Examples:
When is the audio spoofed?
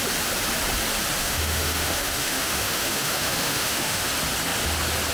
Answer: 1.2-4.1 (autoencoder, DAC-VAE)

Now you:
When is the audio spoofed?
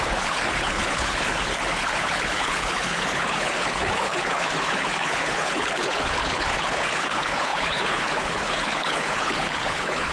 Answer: 0.0-10.1 (codec, HILCodec)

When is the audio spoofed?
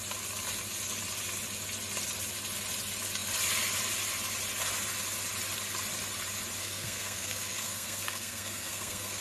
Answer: 6.6-9.2 (codec, SNAC)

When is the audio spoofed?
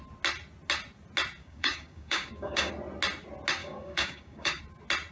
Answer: 1.4-2.7 (codec, DAC); 3.6-4.6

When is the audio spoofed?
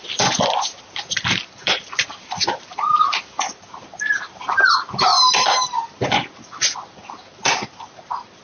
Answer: 1.6-3.5 (vocoder, BigVGAN v2)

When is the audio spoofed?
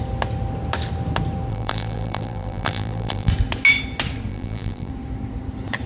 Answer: 1.5-3.3 (vocoder, BigVGAN v2); 4.3-4.9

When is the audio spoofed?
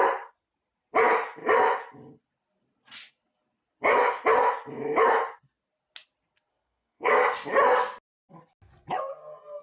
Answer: 6.5-7.1 (codec, SNAC)